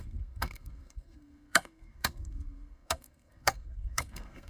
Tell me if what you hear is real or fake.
fake